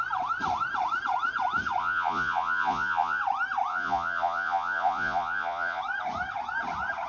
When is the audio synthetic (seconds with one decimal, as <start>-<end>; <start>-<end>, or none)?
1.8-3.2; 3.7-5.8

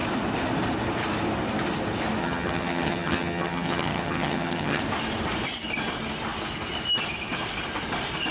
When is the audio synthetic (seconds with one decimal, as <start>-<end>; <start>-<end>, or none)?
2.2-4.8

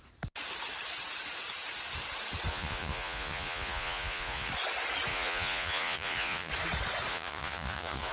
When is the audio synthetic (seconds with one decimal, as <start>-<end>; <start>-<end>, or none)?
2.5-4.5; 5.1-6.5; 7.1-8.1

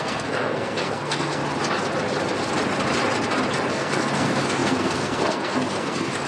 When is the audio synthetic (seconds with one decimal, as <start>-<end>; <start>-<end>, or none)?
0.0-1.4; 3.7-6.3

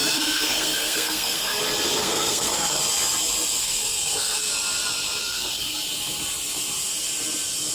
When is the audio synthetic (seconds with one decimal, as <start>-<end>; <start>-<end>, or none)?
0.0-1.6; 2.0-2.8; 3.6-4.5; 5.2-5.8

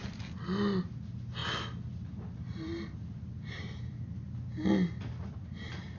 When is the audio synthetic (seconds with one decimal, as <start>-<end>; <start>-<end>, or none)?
none

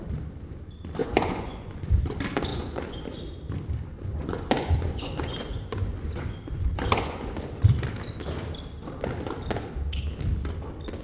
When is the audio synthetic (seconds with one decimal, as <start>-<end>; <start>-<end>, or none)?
1.0-2.0; 2.5-3.2; 3.9-7.5